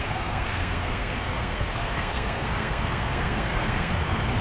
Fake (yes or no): yes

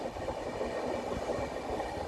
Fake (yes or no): no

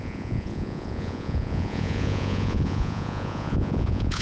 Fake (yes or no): yes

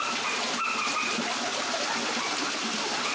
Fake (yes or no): no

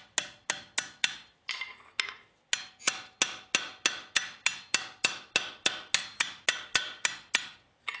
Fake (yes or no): no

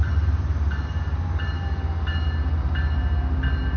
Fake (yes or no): no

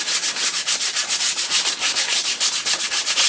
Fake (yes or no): no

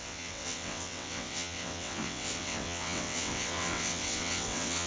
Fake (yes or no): yes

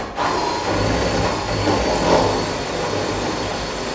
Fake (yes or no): no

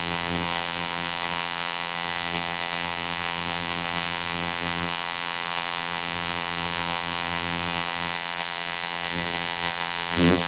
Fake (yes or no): yes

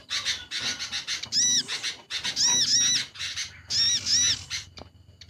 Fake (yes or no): no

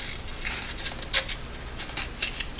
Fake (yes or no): no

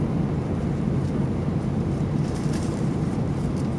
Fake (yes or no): yes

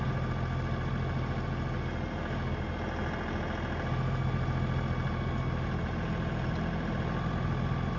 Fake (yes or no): no